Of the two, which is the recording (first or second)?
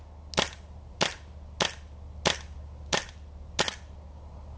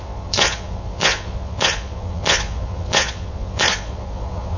first